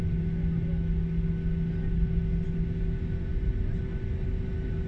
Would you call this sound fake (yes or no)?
no